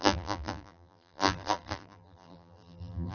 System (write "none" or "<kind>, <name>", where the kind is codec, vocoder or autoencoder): vocoder, BigVGAN v2